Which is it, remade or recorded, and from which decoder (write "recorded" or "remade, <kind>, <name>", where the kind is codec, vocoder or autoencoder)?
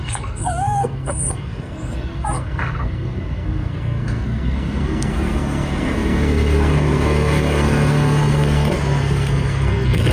remade, codec, SNAC